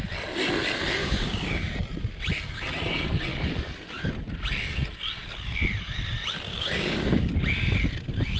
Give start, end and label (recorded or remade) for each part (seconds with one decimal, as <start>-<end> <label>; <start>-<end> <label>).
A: 0.0-1.0 recorded; 1.0-1.7 remade; 1.7-6.5 recorded; 6.5-7.3 remade; 7.3-8.4 recorded